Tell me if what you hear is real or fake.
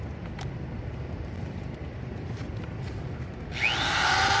real